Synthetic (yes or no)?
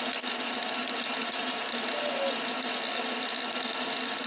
no